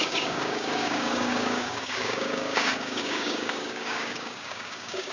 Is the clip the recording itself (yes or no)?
no